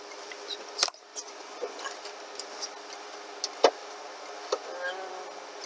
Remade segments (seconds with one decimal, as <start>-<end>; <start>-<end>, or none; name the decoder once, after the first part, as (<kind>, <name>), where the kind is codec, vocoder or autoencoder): 1.1-1.8 (vocoder, Vocos)